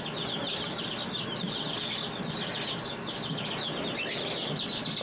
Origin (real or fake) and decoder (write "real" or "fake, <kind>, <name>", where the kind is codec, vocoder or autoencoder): real